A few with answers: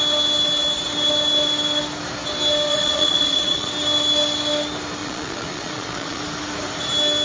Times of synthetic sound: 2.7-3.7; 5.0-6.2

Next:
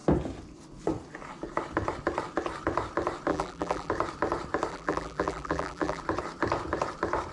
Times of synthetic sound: 3.3-3.9; 4.7-6.0